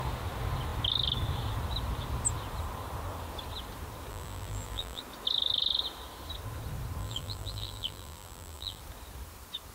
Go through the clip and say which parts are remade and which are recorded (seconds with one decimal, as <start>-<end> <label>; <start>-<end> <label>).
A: 0.0-4.1 recorded; 4.1-5.0 remade; 5.0-7.0 recorded; 7.0-8.8 remade; 8.8-9.7 recorded